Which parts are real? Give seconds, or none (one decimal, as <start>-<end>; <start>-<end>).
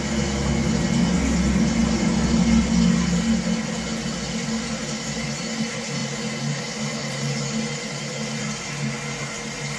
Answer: 0.0-1.8; 2.7-6.0; 6.6-7.0; 7.6-9.8